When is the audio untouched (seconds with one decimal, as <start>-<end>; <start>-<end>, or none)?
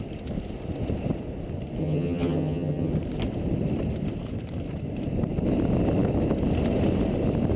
0.0-1.8; 2.9-7.6